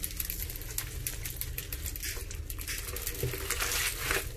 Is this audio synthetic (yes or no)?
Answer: no